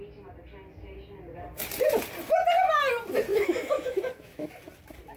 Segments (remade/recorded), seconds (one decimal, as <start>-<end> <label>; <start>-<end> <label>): 0.0-3.3 recorded; 3.3-4.5 remade; 4.5-5.2 recorded